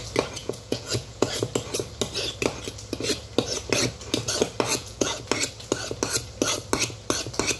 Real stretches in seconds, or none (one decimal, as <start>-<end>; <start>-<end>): 0.0-0.4; 1.3-4.7; 5.2-7.6